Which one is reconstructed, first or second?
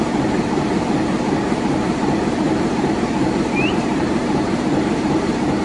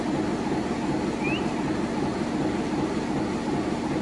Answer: first